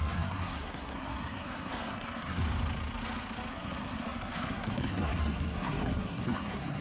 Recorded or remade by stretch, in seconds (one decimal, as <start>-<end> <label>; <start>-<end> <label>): 0.0-2.4 remade; 2.4-3.5 recorded; 3.5-6.8 remade